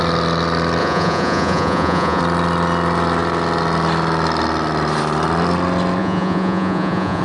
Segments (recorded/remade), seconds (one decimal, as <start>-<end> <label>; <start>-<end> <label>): 0.0-0.8 recorded; 0.8-2.2 remade; 2.2-6.0 recorded; 6.0-7.2 remade